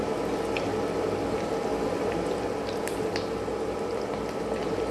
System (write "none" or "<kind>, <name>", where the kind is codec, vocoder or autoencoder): none